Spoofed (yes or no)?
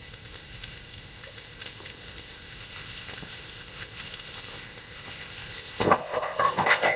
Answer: yes